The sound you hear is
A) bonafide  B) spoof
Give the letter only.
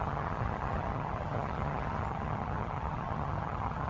B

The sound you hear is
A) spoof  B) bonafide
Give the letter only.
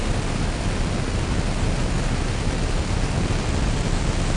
B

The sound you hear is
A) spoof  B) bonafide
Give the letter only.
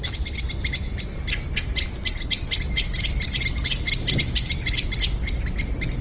B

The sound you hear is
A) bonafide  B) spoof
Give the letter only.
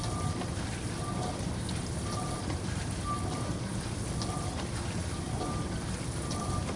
A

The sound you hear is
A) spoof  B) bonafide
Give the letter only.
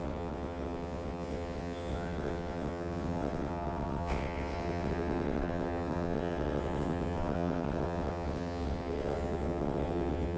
A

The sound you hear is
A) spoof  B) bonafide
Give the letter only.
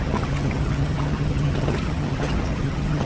A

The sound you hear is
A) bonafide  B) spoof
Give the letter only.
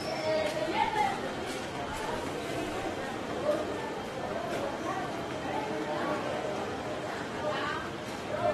B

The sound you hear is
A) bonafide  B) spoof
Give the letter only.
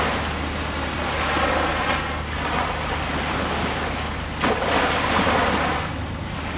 A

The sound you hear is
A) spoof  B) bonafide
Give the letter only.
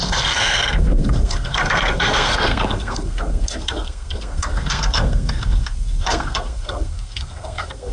A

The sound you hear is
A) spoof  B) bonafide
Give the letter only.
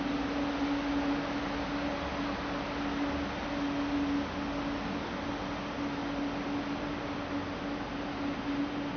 B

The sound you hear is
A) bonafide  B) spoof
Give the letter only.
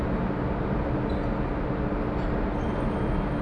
A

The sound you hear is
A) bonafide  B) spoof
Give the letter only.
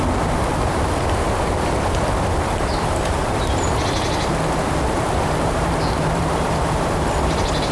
B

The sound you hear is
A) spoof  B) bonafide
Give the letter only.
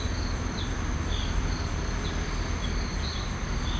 B